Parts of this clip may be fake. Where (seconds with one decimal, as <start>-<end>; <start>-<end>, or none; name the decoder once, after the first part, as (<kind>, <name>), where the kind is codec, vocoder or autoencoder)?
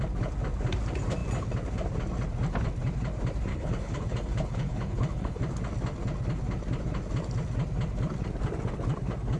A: 3.5-5.4 (codec, HILCodec)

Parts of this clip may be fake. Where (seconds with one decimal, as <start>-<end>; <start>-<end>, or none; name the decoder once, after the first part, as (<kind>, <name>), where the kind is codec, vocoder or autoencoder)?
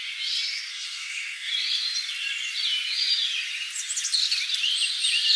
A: 0.7-1.5 (codec, SNAC)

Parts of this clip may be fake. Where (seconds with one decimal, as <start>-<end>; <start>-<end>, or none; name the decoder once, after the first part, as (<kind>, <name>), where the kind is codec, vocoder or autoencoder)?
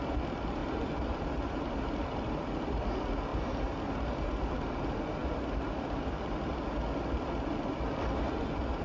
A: 0.6-2.5 (vocoder, BigVGAN v2); 5.2-6.5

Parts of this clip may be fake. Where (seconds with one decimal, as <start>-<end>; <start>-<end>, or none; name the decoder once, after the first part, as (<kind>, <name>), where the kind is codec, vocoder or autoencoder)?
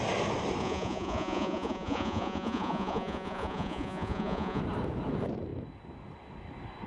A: 0.6-4.6 (vocoder, Vocos)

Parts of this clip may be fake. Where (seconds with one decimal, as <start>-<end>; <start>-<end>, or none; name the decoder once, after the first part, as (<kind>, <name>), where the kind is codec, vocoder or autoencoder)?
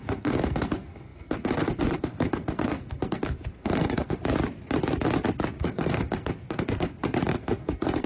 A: 0.0-4.2 (codec, SNAC); 5.6-8.1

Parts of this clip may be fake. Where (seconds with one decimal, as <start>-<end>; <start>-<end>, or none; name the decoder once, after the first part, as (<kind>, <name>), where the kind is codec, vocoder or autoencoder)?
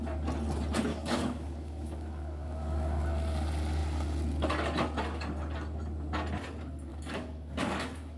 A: 0.9-3.0 (codec, DAC); 6.9-8.2